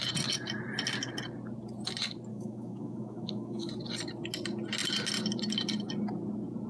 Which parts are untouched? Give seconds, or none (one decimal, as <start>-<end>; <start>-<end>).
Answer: 0.0-2.3; 3.7-6.7